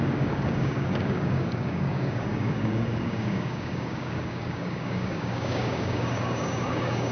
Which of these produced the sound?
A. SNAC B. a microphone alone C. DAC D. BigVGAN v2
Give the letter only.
C